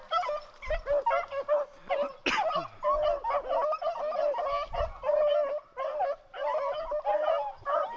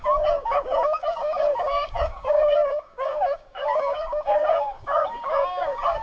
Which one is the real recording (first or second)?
first